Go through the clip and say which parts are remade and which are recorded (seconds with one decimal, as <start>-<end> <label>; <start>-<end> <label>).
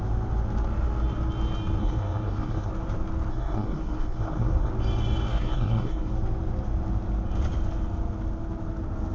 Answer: 0.0-1.8 recorded; 1.8-2.7 remade; 2.7-3.3 recorded; 3.3-4.7 remade; 4.7-5.3 recorded; 5.3-6.1 remade; 6.1-9.1 recorded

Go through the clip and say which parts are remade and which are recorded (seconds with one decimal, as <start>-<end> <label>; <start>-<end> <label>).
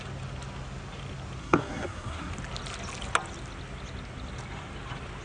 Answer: 0.0-1.4 recorded; 1.4-2.3 remade; 2.3-5.2 recorded